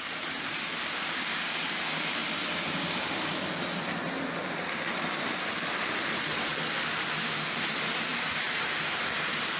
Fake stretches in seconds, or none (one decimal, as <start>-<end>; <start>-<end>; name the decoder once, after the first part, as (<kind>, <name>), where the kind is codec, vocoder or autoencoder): 0.0-2.2 (vocoder, BigVGAN v2); 5.2-6.5; 7.2-9.6